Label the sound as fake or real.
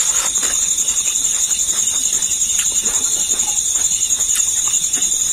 fake